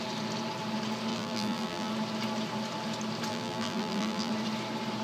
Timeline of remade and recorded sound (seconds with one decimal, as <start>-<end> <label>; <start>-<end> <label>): 0.0-1.1 recorded; 1.1-1.9 remade; 1.9-3.3 recorded; 3.3-4.3 remade; 4.3-5.0 recorded

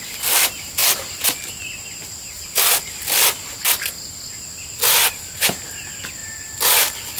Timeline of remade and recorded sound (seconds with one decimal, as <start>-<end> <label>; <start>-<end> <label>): 0.0-7.2 recorded